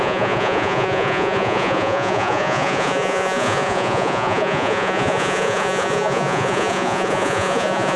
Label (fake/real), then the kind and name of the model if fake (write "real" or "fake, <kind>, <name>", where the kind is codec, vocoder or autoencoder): fake, vocoder, Vocos